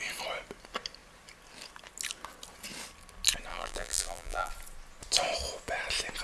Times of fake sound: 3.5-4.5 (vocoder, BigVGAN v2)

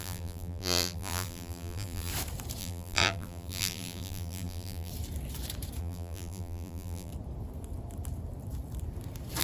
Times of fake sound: 0.0-2.1 (vocoder, BigVGAN v2); 2.6-4.9; 5.8-7.1

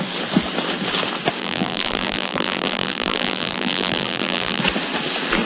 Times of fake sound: 1.4-4.6 (vocoder, BigVGAN v2)